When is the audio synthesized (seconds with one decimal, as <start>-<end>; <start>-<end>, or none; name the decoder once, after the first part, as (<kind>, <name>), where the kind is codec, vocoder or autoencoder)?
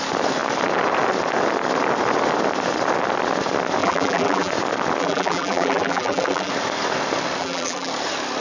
3.8-4.5 (vocoder, BigVGAN v2); 5.0-6.5; 7.4-7.9